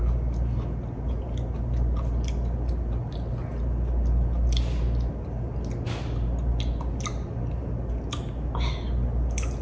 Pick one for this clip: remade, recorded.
recorded